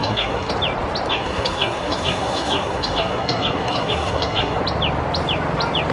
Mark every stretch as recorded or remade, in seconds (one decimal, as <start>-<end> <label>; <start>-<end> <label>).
0.0-0.5 remade; 0.5-1.1 recorded; 1.1-4.6 remade; 4.6-5.9 recorded